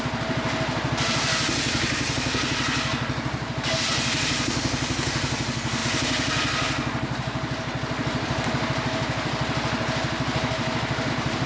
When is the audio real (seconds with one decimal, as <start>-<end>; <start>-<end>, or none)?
0.0-11.5